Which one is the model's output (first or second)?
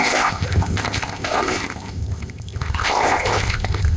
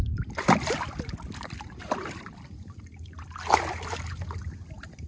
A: first